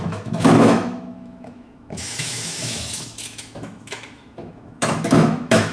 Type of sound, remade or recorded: remade